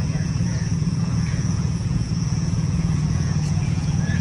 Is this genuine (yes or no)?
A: no